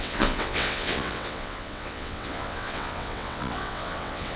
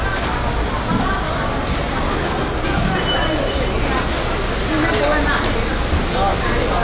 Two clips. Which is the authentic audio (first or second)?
second